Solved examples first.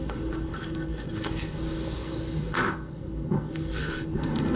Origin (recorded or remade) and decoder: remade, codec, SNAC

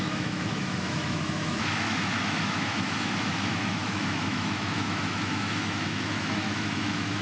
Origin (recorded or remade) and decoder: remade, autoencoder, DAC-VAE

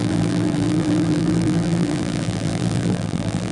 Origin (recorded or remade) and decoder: remade, vocoder, BigVGAN v2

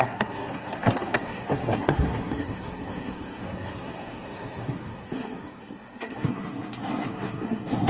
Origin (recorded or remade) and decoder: remade, codec, SNAC